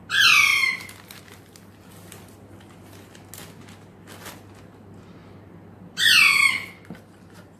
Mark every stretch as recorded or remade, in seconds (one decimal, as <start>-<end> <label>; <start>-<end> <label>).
0.0-7.6 recorded